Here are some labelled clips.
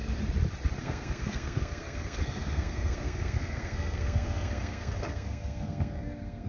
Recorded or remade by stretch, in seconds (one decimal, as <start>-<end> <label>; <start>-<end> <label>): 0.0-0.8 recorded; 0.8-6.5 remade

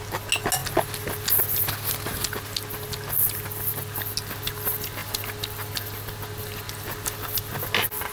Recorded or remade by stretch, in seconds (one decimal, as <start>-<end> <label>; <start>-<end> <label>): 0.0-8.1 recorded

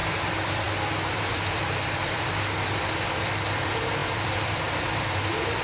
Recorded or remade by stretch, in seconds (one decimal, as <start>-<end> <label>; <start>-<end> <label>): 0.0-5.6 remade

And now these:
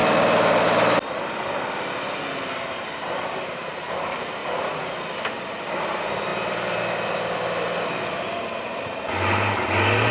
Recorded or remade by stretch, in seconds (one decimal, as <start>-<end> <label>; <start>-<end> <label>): 0.0-10.1 recorded

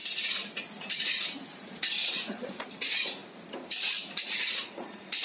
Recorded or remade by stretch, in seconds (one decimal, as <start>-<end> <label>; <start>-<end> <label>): 0.0-0.9 recorded; 0.9-5.2 remade